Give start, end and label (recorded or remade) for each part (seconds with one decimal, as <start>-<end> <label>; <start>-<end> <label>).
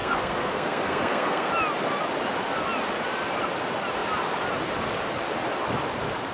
0.0-1.5 remade; 1.5-6.3 recorded